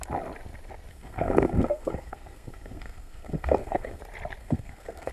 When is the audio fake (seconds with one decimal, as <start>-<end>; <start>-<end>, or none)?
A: 0.9-4.0; 4.4-5.1